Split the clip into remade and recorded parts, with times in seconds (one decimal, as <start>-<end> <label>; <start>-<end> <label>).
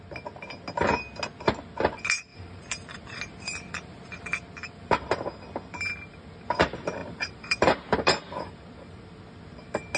0.0-2.3 recorded; 2.3-4.9 remade; 4.9-7.0 recorded; 7.0-8.0 remade; 8.0-10.0 recorded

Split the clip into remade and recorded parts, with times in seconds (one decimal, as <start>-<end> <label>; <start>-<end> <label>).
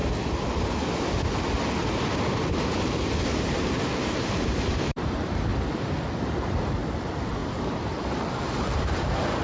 0.0-2.8 recorded; 2.8-5.5 remade; 5.5-6.1 recorded; 6.1-9.4 remade